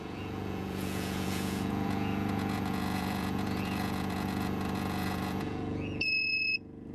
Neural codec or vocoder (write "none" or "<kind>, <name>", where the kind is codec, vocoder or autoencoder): vocoder, Vocos